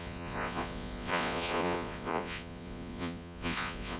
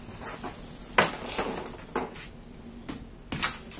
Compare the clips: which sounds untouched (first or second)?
second